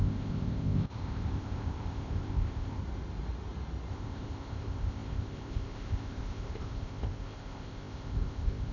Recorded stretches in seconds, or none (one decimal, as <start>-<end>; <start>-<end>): 2.8-3.9